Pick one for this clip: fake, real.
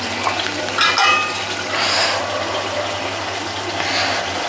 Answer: real